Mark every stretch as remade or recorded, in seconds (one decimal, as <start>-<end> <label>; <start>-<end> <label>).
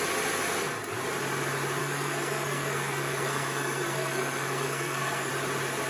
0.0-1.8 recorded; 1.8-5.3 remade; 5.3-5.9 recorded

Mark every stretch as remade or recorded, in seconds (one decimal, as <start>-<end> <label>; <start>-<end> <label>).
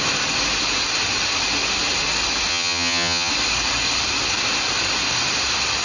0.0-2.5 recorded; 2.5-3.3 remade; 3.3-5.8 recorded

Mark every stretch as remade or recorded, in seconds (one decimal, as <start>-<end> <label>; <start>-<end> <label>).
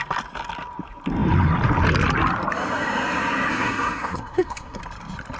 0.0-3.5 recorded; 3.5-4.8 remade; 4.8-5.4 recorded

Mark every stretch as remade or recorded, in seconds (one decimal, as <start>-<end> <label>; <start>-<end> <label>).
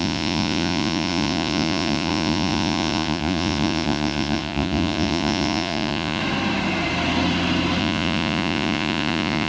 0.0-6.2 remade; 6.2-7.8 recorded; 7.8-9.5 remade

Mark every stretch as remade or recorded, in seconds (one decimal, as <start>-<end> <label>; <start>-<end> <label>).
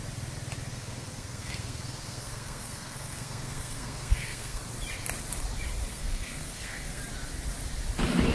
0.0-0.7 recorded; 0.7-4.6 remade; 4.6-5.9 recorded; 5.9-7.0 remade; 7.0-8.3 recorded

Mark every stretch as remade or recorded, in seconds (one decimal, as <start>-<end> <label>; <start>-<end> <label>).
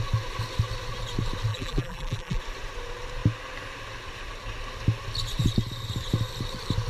0.0-1.5 recorded; 1.5-2.4 remade; 2.4-6.9 recorded